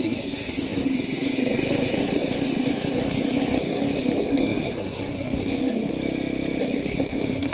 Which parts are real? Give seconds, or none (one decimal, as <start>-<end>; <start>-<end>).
5.9-6.6